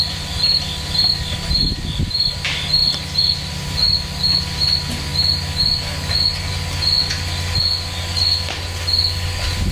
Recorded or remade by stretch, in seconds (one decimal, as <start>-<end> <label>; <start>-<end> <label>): 0.0-9.7 recorded